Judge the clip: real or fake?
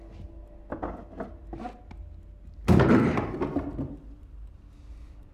real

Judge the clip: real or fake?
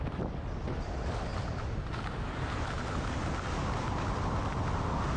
real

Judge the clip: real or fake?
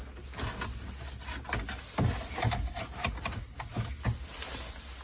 real